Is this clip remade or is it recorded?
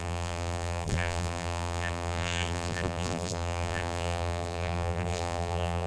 remade